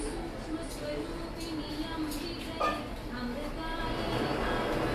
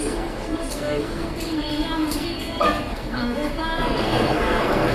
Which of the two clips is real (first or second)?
first